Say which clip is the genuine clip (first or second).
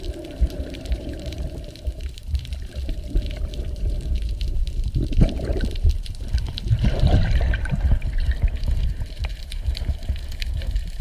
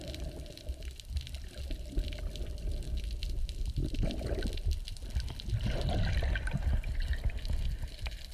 second